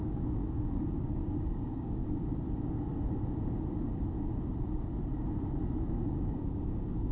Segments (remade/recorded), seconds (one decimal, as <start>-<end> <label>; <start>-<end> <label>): 0.0-2.0 remade; 2.0-5.8 recorded; 5.8-7.1 remade